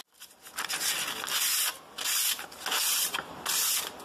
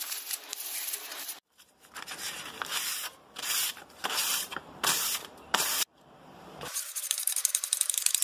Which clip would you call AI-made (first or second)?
second